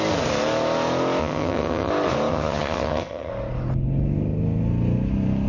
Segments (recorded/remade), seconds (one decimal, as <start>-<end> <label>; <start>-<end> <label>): 0.0-1.2 recorded; 1.2-1.9 remade; 1.9-2.3 recorded; 2.3-3.3 remade; 3.3-5.5 recorded

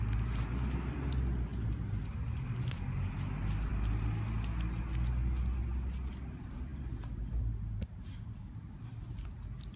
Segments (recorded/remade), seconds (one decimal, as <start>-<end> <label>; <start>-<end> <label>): 0.0-9.8 recorded

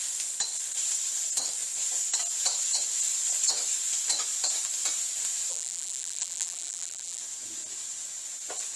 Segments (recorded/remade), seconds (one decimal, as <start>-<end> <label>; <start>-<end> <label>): 0.0-5.5 recorded; 5.5-7.2 remade; 7.2-8.8 recorded

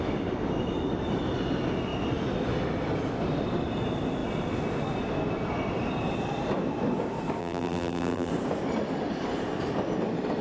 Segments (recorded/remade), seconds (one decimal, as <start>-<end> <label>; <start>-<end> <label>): 0.0-7.4 recorded; 7.4-8.3 remade; 8.3-10.4 recorded

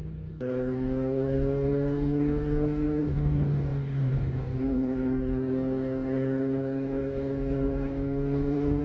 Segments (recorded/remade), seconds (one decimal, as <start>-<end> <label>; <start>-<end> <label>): 0.0-8.8 remade

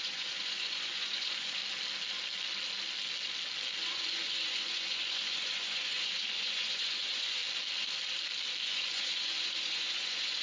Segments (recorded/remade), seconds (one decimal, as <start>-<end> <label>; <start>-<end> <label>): 0.0-1.6 remade; 1.6-3.8 recorded; 3.8-7.4 remade; 7.4-8.6 recorded; 8.6-10.4 remade